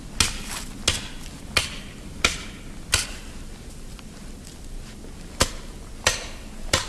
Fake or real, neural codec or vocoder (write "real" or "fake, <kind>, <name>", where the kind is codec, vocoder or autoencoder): real